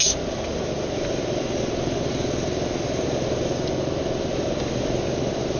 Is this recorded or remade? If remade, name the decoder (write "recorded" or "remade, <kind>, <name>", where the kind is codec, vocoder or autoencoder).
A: recorded